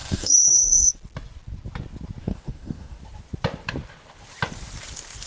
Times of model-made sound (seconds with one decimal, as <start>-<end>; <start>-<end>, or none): 0.0-0.9; 2.2-3.0